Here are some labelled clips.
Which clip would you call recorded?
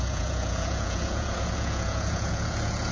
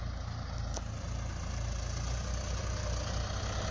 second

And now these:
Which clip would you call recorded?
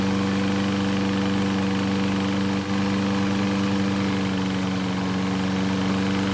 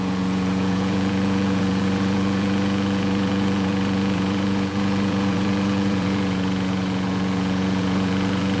first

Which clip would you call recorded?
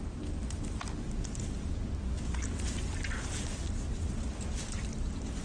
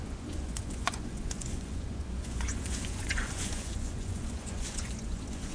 first